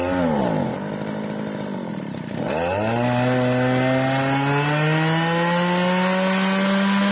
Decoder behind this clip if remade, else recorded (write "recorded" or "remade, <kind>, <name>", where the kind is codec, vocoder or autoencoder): recorded